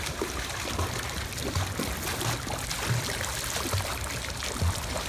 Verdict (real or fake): real